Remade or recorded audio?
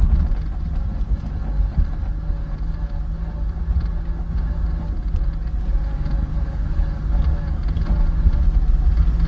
recorded